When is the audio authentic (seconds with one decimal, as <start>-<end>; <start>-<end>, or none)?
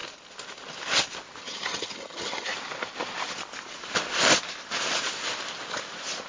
0.0-1.4; 2.5-6.3